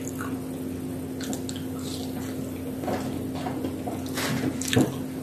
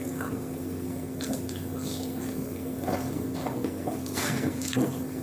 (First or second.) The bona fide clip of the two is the first